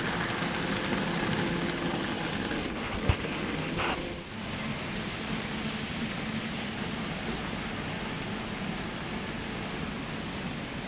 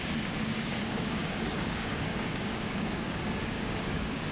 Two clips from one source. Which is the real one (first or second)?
first